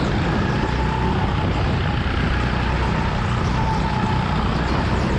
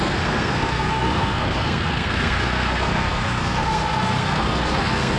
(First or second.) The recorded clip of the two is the first